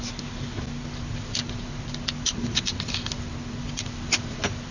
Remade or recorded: recorded